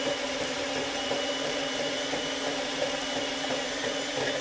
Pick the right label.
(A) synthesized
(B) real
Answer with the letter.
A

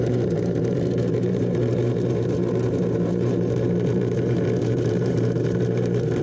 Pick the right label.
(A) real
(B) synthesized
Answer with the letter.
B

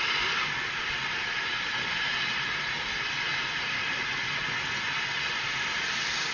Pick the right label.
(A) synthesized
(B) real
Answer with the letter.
B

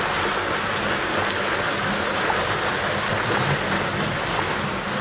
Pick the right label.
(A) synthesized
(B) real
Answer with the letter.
B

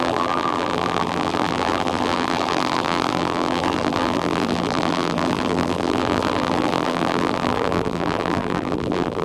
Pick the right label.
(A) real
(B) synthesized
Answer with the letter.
B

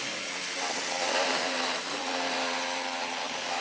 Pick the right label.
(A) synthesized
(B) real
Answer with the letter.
A